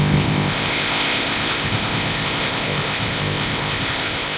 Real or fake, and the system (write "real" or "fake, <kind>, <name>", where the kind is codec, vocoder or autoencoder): fake, codec, ZipCodec